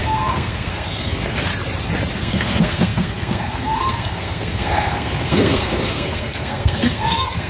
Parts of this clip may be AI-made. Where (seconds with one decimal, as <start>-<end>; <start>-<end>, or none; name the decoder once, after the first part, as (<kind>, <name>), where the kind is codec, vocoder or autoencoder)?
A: 0.0-1.5 (codec, SNAC); 2.1-7.5